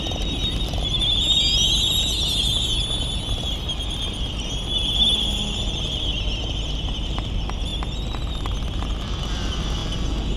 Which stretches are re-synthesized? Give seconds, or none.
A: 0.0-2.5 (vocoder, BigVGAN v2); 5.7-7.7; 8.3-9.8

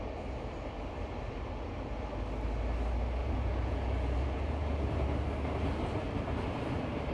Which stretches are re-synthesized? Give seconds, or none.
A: 3.2-4.9 (vocoder, Vocos)

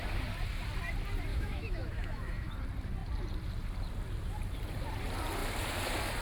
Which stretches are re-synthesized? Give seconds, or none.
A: 1.3-2.5 (autoencoder, DAC-VAE)

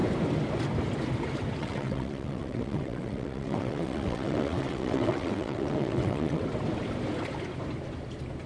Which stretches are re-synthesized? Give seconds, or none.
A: 1.6-6.4 (vocoder, WaveNeXt)

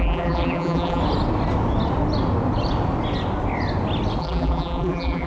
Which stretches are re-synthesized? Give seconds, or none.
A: 0.0-1.0 (vocoder, BigVGAN v2); 4.2-5.3

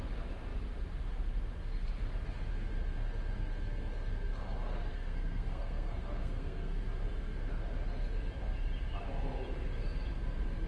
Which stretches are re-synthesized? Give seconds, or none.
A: 4.9-6.8 (codec, SNAC)

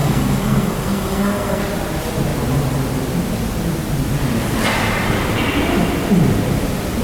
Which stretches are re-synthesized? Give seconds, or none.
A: 0.0-1.6 (codec, SNAC)

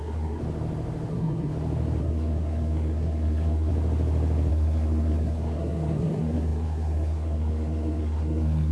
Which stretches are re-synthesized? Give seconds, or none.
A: 0.0-0.4 (codec, SNAC); 1.1-1.5; 2.0-3.7; 4.5-8.7